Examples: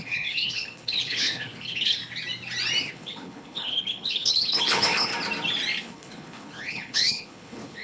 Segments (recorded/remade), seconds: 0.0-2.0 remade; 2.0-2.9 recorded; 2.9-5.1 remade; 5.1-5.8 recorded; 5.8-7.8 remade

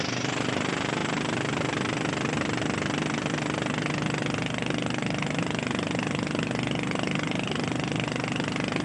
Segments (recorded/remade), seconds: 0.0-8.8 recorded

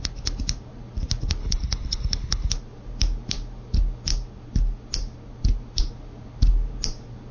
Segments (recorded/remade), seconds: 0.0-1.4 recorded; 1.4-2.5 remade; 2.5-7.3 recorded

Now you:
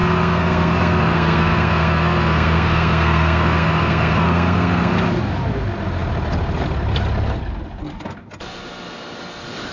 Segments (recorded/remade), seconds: 0.0-4.9 remade; 4.9-9.7 recorded